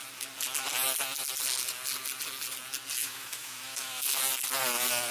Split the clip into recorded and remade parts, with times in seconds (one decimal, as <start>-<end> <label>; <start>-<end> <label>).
0.0-3.0 recorded; 3.0-4.2 remade; 4.2-5.1 recorded